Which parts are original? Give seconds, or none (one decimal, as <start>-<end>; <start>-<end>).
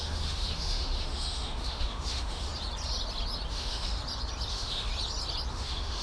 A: 2.5-3.5; 4.0-4.5; 4.9-5.5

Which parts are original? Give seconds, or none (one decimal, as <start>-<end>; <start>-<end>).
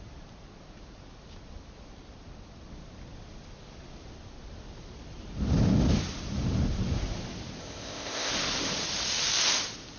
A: 0.0-7.6; 8.3-10.0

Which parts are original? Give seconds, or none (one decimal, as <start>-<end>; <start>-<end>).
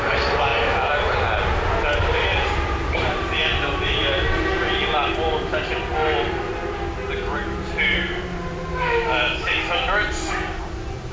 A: 0.0-11.1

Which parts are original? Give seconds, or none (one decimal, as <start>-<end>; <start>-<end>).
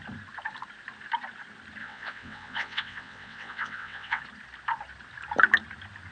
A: 0.0-1.8; 4.2-6.1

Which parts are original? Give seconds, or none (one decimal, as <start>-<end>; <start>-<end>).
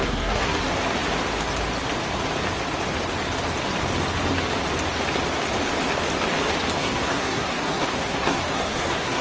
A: 0.6-6.8